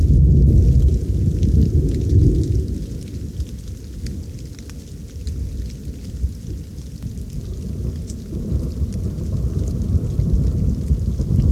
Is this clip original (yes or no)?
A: yes